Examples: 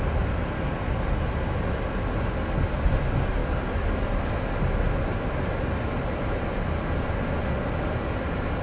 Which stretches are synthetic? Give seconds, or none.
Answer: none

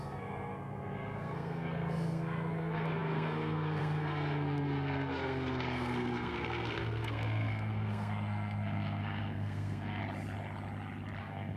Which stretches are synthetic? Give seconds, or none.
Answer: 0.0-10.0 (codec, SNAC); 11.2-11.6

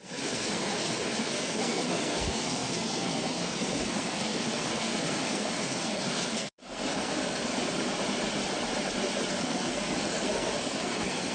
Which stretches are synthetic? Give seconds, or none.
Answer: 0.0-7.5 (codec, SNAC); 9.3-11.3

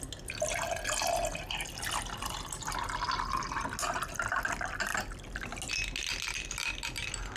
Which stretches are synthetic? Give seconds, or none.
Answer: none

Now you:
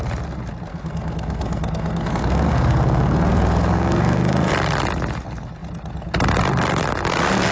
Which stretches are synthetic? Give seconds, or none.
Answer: 0.7-4.5 (codec, SNAC)